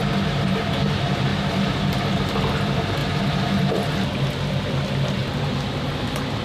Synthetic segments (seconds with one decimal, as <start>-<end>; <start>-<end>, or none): 3.0-3.9

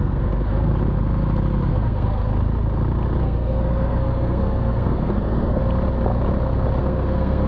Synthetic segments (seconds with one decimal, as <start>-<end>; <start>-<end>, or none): 0.0-0.7; 1.7-2.3; 3.2-5.6; 6.8-7.5

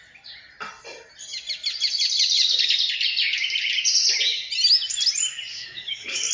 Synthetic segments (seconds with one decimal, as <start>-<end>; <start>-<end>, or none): 5.5-6.3

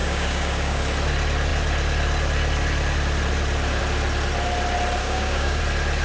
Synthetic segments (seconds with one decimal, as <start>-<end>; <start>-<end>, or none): 0.0-0.8; 5.0-5.6